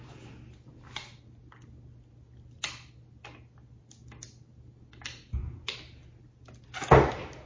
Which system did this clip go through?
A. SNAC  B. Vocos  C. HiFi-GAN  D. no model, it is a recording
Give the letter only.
D